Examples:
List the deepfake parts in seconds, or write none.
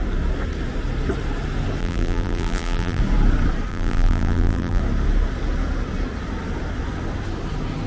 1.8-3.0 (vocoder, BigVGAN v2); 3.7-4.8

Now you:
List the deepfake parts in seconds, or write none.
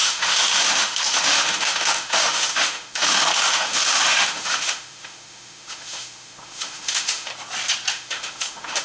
0.0-7.3 (autoencoder, DAC-VAE); 7.9-8.8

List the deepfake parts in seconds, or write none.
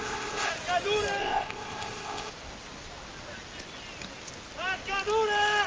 0.0-0.5 (codec, ZipCodec); 1.2-2.3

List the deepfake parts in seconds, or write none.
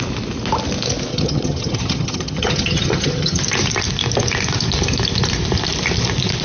1.1-3.4 (vocoder, HiFi-GAN)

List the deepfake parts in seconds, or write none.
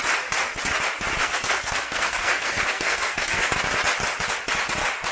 1.2-3.5 (codec, SNAC)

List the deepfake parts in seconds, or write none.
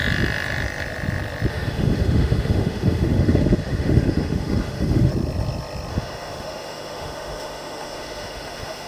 1.5-5.1 (autoencoder, DAC-VAE); 5.9-8.9